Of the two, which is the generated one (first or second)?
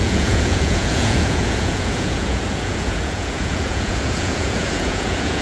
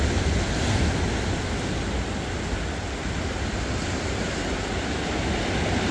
first